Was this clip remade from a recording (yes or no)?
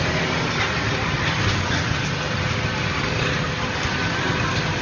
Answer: no